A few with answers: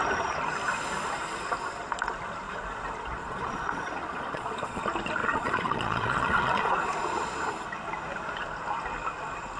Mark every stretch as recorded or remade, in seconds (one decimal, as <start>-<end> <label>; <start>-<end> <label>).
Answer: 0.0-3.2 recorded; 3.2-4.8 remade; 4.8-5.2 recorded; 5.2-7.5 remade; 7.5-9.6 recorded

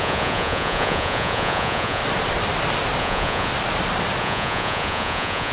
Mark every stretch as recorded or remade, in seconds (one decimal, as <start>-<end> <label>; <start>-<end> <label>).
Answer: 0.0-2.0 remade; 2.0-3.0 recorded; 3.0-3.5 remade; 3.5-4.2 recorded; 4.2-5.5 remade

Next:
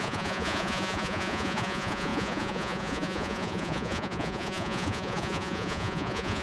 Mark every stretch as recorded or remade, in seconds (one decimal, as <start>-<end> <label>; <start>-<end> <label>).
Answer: 0.0-6.4 remade

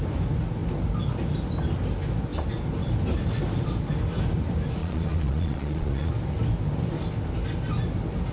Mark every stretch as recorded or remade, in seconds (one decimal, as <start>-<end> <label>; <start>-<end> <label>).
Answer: 0.0-4.8 recorded; 4.8-6.1 remade; 6.1-8.3 recorded